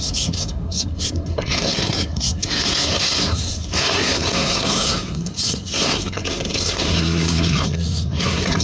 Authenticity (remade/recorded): remade